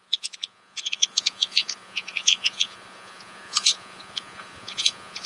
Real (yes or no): no